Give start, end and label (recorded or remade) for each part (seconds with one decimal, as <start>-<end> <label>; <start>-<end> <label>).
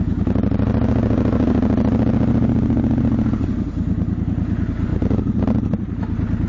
0.0-6.5 recorded